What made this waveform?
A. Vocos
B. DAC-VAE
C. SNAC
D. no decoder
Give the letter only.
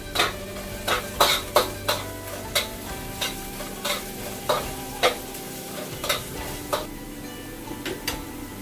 D